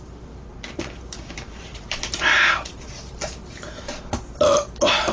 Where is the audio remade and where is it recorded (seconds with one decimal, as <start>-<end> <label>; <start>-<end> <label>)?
0.0-0.5 recorded; 0.5-3.0 remade; 3.0-3.4 recorded; 3.4-4.3 remade; 4.3-5.1 recorded

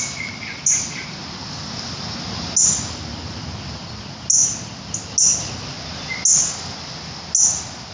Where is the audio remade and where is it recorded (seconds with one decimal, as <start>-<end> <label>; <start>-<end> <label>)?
0.0-7.9 recorded

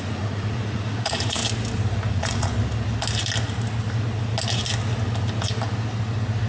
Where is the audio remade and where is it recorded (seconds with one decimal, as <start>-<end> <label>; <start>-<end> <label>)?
0.0-1.4 remade; 1.4-2.1 recorded; 2.1-2.5 remade; 2.5-6.5 recorded

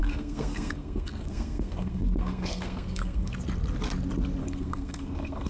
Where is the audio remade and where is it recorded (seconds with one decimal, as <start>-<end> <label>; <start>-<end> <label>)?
0.0-3.3 remade; 3.3-4.4 recorded; 4.4-5.5 remade

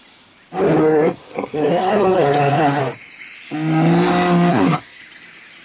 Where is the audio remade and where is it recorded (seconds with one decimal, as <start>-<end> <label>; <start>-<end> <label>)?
0.0-0.8 recorded; 0.8-2.8 remade; 2.8-4.5 recorded; 4.5-5.0 remade; 5.0-5.6 recorded

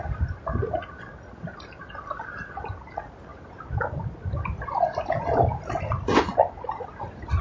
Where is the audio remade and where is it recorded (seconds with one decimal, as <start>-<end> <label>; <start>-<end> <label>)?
0.0-7.4 recorded

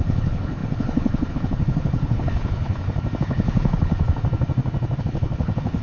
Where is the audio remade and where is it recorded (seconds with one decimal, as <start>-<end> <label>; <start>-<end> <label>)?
0.0-2.7 remade; 2.7-3.2 recorded; 3.2-3.9 remade; 3.9-5.0 recorded; 5.0-5.8 remade